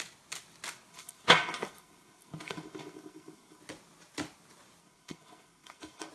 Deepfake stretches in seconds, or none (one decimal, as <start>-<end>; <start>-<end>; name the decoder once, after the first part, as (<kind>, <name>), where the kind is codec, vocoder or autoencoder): 0.9-3.6 (codec, SNAC); 4.8-6.1